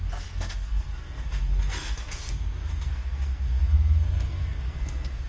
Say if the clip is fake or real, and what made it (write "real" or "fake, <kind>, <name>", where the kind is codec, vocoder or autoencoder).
fake, codec, SNAC